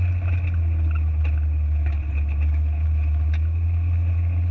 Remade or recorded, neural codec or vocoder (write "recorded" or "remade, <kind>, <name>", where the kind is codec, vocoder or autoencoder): recorded